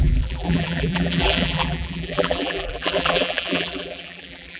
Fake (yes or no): yes